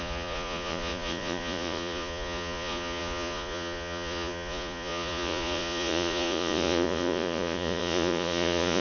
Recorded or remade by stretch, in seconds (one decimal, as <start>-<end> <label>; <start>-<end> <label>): 0.0-8.8 remade